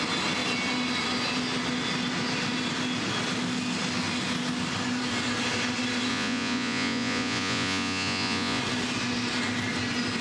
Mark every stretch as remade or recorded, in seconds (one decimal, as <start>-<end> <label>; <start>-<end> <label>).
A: 0.0-6.1 recorded; 6.1-8.6 remade; 8.6-10.2 recorded